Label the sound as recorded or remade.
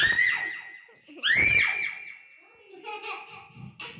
recorded